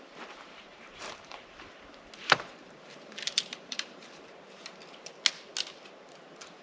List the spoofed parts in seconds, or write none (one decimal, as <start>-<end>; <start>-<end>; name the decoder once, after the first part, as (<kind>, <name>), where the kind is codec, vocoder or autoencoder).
0.7-1.7 (vocoder, BigVGAN v2); 2.2-4.4

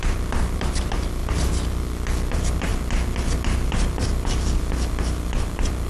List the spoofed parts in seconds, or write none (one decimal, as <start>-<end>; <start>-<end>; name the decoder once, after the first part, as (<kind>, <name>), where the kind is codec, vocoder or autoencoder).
0.0-1.2 (vocoder, BigVGAN v2); 2.3-2.7; 3.7-5.9

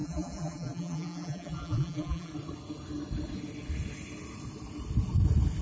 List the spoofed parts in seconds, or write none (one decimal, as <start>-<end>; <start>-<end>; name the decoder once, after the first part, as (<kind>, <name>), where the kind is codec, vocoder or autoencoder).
0.0-2.3 (vocoder, BigVGAN v2)

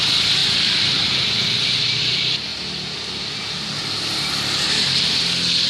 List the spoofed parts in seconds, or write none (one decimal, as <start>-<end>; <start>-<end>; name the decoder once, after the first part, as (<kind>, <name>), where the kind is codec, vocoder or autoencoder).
0.0-2.5 (vocoder, BigVGAN v2); 3.8-5.7

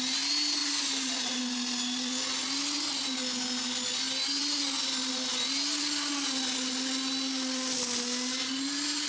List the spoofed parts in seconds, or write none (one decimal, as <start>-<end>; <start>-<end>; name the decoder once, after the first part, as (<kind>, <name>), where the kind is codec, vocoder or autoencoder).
0.6-1.4 (vocoder, BigVGAN v2)

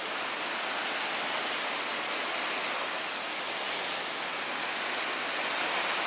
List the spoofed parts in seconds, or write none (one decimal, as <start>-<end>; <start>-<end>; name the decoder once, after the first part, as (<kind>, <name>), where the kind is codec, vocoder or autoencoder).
none